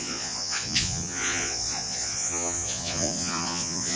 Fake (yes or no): yes